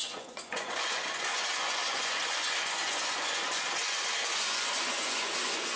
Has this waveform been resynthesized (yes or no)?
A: yes